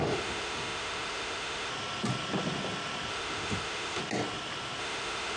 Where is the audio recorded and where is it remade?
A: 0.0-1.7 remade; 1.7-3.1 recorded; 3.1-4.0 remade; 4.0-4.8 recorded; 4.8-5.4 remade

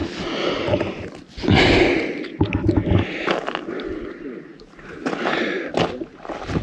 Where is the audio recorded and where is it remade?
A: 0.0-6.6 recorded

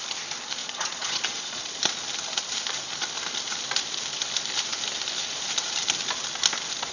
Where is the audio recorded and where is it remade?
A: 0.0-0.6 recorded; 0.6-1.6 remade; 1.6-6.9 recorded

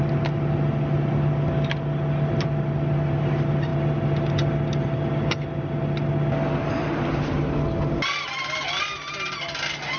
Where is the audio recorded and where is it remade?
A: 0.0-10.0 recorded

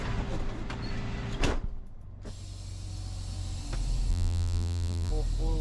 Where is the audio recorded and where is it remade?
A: 0.0-4.1 recorded; 4.1-5.1 remade; 5.1-5.6 recorded

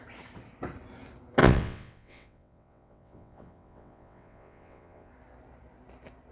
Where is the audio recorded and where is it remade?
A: 0.0-1.4 recorded; 1.4-5.1 remade; 5.1-6.3 recorded

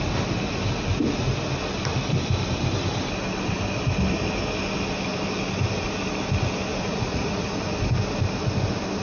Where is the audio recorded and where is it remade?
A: 0.0-6.7 recorded; 6.7-7.5 remade; 7.5-9.0 recorded

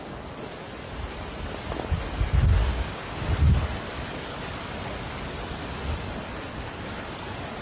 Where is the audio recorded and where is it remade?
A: 0.0-2.7 recorded; 2.7-3.3 remade; 3.3-7.6 recorded